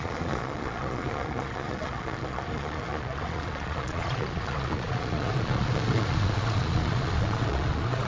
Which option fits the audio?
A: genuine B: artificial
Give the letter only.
B